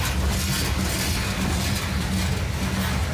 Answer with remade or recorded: recorded